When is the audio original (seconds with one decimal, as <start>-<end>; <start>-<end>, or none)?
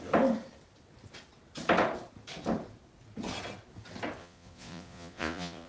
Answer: 0.0-4.2